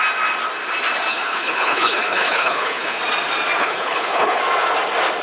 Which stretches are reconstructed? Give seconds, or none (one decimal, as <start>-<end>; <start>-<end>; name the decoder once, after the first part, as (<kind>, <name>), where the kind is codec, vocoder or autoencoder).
1.1-3.0 (codec, HILCodec); 3.6-4.4